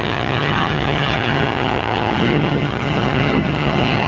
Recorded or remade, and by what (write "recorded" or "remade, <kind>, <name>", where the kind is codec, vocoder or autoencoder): remade, vocoder, HiFi-GAN